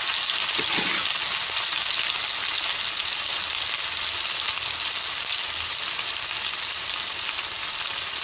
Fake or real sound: real